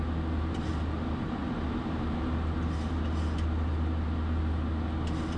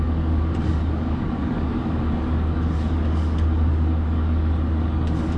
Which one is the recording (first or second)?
first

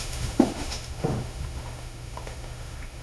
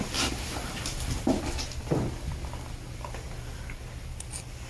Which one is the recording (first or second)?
second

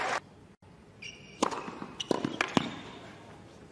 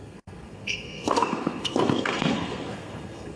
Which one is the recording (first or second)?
first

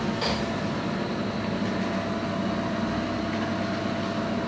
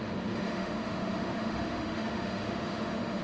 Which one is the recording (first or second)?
first